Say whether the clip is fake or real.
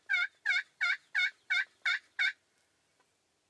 real